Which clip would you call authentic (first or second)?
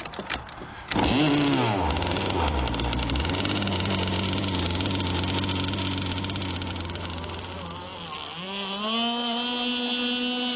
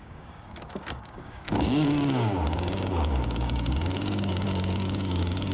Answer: first